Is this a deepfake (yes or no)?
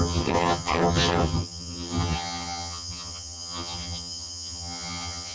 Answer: yes